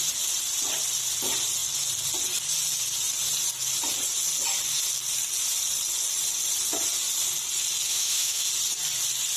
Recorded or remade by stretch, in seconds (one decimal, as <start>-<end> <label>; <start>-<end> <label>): 0.0-7.9 recorded; 7.9-8.5 remade; 8.5-9.4 recorded